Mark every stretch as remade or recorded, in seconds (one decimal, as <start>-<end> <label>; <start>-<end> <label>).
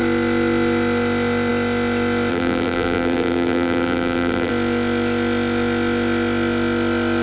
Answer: 0.0-2.3 recorded; 2.3-4.5 remade; 4.5-7.2 recorded